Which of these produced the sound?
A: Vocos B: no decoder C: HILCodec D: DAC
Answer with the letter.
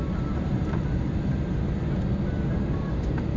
B